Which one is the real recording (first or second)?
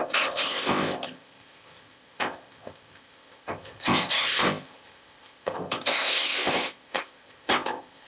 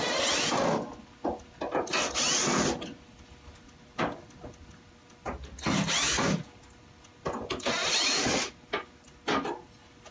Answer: second